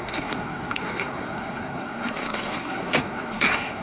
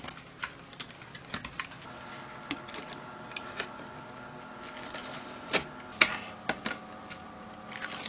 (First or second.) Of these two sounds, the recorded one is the second